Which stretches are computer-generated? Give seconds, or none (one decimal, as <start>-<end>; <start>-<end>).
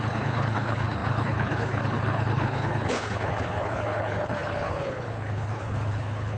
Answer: 0.0-6.4